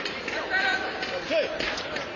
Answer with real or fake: real